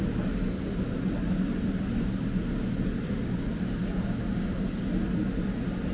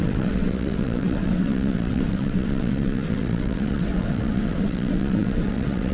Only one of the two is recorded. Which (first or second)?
first